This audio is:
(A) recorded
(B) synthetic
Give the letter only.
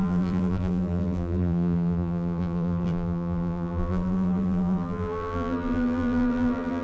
B